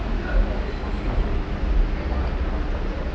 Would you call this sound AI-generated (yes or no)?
no